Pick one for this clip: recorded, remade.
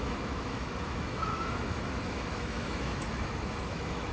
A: remade